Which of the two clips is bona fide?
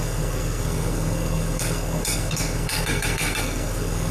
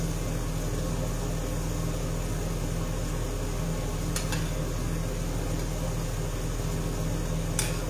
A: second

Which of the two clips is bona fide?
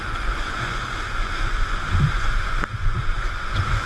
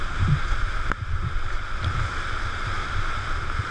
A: second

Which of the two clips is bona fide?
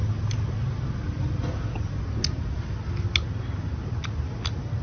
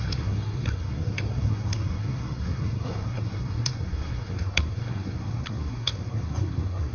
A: first